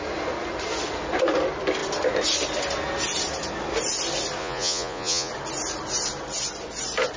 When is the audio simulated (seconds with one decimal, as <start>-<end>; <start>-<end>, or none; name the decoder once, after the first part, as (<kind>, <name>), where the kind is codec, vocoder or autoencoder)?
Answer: 4.4-5.3 (vocoder, Vocos)